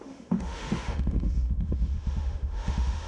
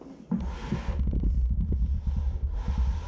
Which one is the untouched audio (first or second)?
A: second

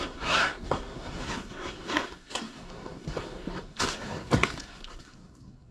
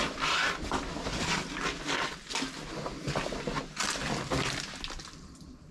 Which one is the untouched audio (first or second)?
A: second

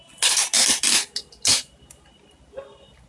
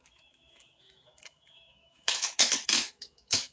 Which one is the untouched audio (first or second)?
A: first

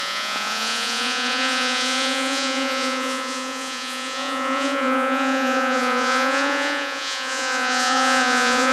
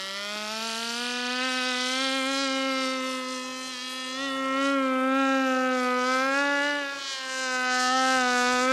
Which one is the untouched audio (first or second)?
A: second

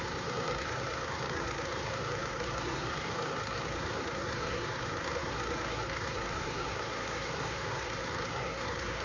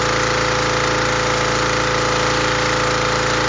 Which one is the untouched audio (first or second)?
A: second